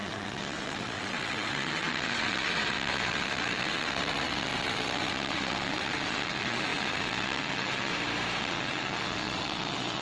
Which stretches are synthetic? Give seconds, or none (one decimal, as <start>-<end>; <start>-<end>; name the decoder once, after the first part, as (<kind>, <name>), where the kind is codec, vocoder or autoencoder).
0.0-7.9 (vocoder, WaveNeXt); 8.4-10.0